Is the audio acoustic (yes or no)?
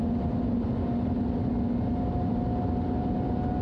yes